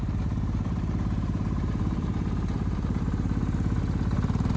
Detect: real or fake fake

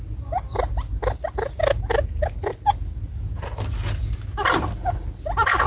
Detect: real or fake real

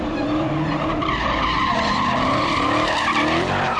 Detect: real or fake fake